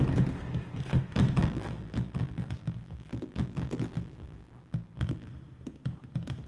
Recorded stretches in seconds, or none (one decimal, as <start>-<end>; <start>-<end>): 0.0-1.4; 5.3-6.5